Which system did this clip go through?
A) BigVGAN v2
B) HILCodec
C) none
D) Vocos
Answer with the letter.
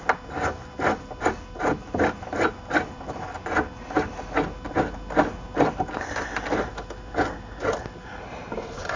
C